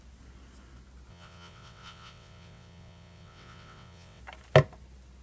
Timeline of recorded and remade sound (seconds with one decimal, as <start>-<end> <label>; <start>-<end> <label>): 0.0-1.1 recorded; 1.1-4.2 remade; 4.2-5.2 recorded